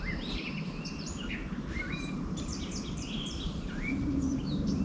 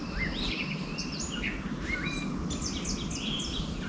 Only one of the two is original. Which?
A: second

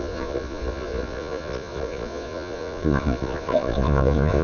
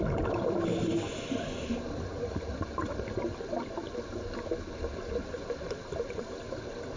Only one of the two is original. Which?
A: second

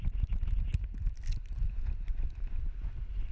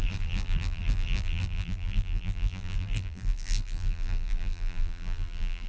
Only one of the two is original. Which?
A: first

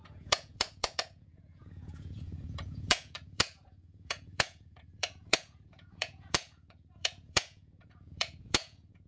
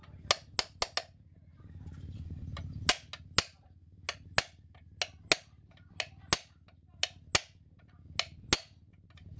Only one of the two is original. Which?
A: second